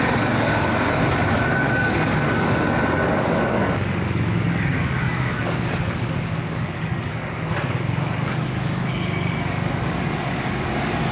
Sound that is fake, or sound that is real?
fake